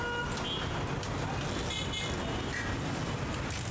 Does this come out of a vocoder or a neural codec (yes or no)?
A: no